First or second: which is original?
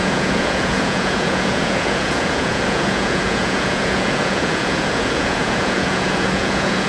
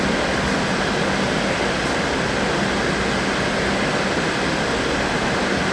second